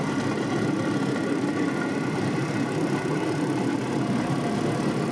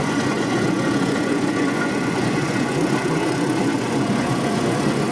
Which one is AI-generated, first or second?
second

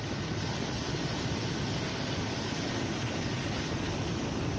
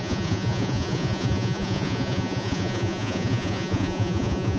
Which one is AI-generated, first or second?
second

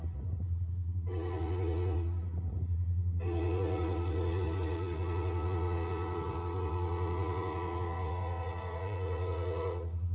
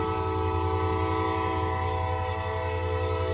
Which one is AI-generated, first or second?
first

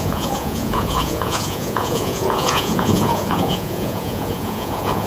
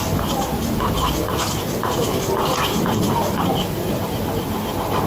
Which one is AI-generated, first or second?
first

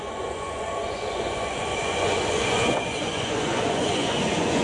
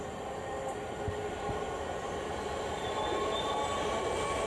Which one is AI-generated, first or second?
first